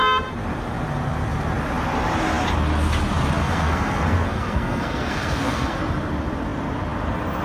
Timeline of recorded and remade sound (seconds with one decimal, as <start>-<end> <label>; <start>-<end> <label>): 0.0-3.4 recorded; 3.4-5.8 remade; 5.8-7.4 recorded